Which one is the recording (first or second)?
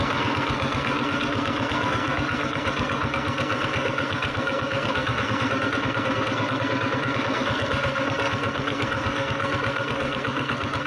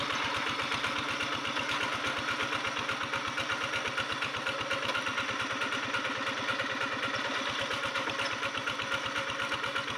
second